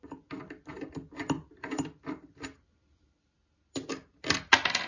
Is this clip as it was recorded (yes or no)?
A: yes